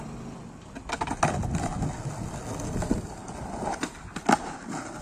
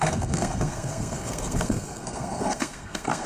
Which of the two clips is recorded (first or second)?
first